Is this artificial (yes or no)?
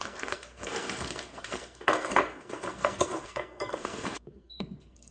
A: yes